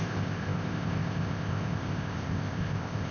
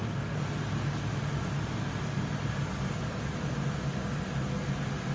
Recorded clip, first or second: second